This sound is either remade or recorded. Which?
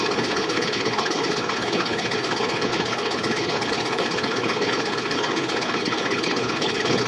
remade